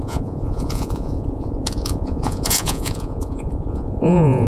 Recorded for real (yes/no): no